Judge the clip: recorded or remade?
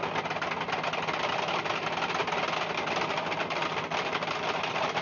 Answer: recorded